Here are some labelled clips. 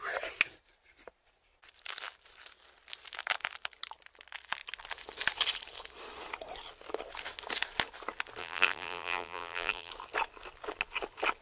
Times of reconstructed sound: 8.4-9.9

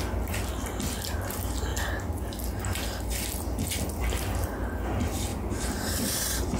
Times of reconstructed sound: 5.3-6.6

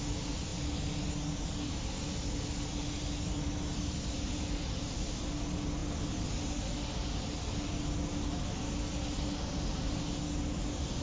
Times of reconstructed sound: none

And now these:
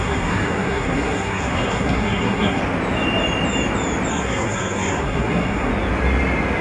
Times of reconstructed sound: 0.0-2.6; 4.1-5.7